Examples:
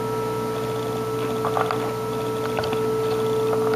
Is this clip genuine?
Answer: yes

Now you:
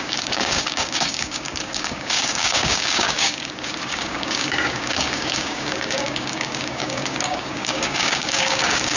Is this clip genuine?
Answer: no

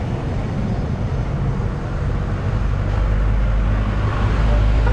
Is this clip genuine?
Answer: yes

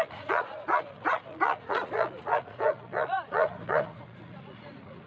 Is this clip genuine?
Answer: no